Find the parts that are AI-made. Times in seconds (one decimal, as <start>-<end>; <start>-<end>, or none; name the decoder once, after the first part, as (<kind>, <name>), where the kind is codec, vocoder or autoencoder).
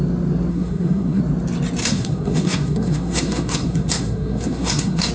0.5-1.2 (codec, SNAC); 1.8-5.1